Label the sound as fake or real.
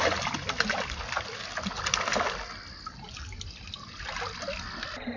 real